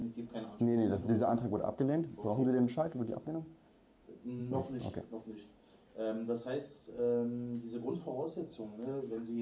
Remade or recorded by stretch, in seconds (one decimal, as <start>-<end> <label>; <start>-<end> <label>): 0.0-0.6 recorded; 0.6-5.8 remade; 5.8-7.9 recorded; 7.9-9.4 remade